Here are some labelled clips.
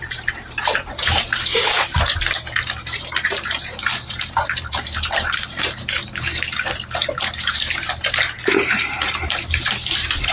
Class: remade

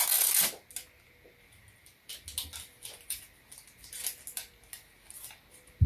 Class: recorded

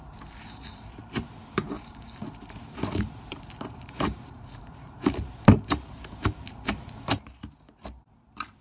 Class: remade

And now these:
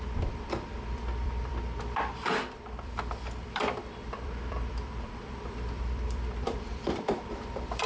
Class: remade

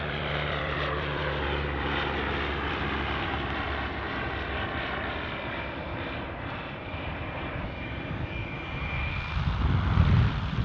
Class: remade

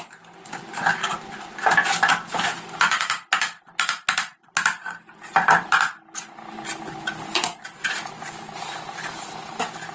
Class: recorded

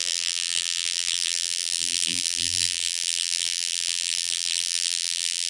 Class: remade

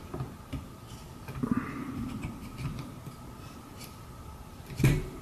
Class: recorded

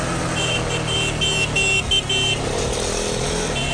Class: recorded